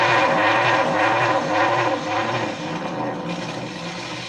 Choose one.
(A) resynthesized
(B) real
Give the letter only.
B